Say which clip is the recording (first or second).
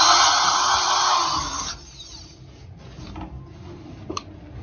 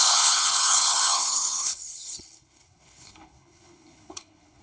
first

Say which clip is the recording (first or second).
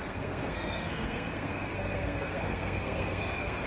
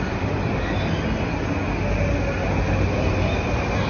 second